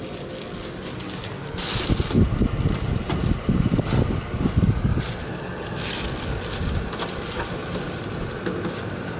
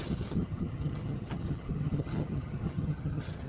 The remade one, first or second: second